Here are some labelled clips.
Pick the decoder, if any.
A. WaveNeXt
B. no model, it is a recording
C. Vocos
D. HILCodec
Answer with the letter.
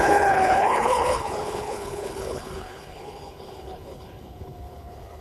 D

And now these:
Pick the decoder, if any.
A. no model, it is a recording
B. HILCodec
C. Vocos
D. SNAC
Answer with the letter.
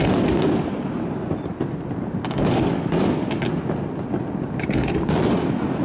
A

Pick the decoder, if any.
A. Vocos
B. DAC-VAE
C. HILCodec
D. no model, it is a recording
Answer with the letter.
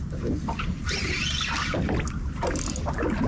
D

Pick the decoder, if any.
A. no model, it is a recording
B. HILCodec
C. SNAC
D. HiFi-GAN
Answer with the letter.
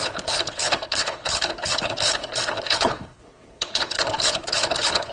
B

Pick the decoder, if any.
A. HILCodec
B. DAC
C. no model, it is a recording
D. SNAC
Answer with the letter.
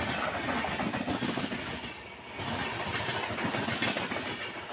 C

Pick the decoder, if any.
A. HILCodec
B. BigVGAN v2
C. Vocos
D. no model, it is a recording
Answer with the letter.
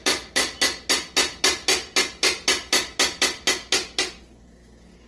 D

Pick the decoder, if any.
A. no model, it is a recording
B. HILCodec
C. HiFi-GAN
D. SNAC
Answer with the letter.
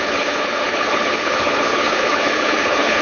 B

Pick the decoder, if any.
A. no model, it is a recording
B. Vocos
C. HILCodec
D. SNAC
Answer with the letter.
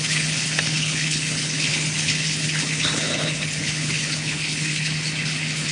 C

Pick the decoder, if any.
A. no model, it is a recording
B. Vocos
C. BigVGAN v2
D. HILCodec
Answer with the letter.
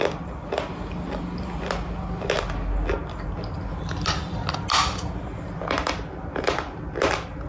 A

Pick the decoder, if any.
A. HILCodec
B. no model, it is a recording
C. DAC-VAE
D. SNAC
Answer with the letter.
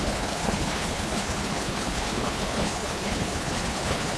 A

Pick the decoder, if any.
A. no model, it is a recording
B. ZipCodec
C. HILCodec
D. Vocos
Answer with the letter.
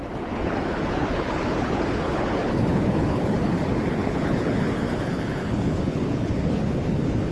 C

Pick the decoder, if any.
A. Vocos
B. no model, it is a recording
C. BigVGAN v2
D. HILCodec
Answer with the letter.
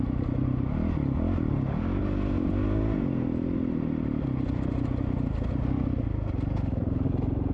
B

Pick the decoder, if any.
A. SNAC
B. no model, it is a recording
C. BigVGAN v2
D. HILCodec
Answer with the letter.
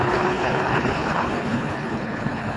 D